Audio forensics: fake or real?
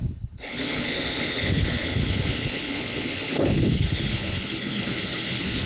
fake